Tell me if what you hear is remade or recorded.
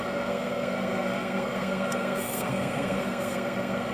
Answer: remade